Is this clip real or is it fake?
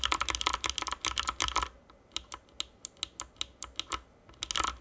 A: real